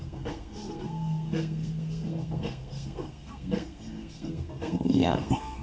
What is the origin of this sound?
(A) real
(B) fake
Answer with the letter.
B